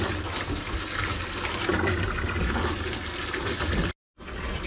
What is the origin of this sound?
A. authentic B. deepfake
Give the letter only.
A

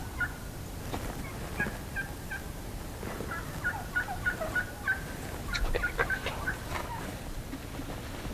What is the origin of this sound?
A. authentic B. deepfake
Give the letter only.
B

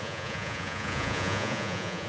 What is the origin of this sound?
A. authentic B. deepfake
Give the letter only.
B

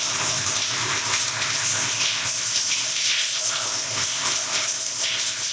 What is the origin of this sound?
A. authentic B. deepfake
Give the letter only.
B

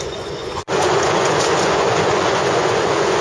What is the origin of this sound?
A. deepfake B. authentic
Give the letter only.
A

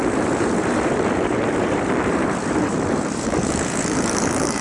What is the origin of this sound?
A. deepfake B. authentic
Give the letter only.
A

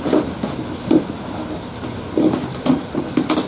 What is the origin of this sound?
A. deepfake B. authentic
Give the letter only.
B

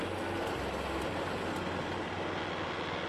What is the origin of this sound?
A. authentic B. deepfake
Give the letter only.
A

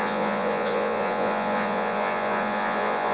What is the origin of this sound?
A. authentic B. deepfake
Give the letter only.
B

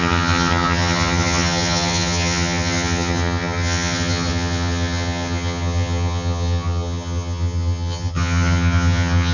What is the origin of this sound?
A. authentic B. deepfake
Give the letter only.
B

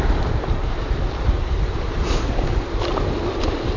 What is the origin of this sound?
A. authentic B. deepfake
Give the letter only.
B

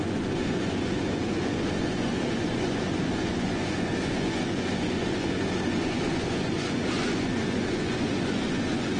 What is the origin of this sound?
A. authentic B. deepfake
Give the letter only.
B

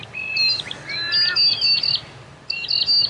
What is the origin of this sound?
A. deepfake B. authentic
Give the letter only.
B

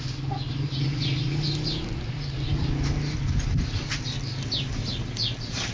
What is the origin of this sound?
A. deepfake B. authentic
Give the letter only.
B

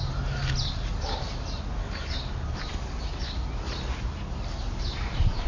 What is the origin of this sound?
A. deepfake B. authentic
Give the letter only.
B